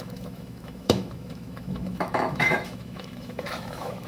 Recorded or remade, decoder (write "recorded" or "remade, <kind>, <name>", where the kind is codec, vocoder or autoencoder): remade, autoencoder, DAC-VAE